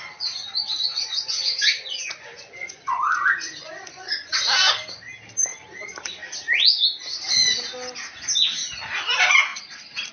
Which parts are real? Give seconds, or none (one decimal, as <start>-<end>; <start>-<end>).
0.0-0.9; 4.3-10.1